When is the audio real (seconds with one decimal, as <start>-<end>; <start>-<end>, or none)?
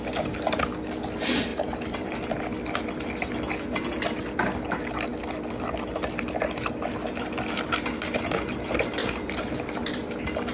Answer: 0.0-1.5; 2.2-9.0; 9.9-10.5